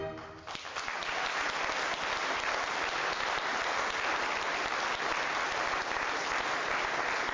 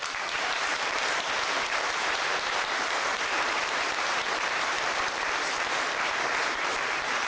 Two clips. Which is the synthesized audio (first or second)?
second